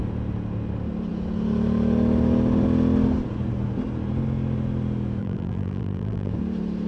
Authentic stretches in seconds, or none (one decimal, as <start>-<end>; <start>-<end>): 0.0-5.2; 6.3-6.9